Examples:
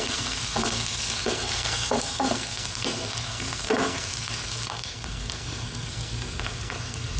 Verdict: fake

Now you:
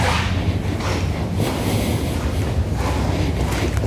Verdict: real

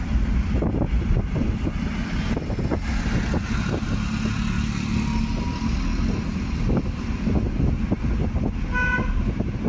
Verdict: real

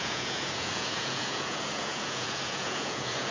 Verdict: fake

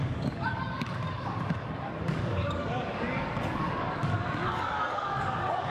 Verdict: fake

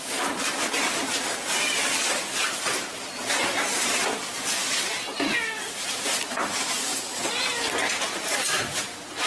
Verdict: real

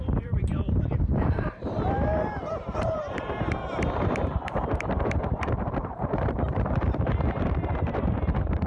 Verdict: fake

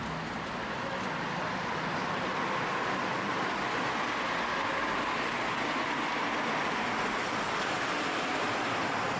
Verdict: real